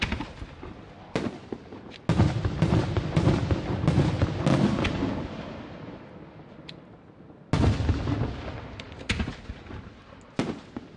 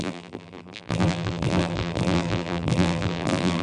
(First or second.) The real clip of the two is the first